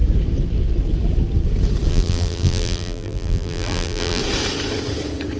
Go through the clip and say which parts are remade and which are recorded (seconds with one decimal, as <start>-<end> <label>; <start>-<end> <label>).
0.0-1.9 recorded; 1.9-4.2 remade; 4.2-5.4 recorded